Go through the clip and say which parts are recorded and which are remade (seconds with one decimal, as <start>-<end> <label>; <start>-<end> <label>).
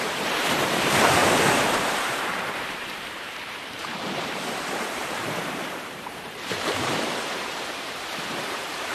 0.0-1.2 remade; 1.2-1.8 recorded; 1.8-8.9 remade